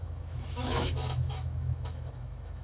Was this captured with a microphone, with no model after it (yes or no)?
no